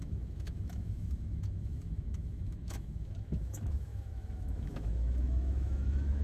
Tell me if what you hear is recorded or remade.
remade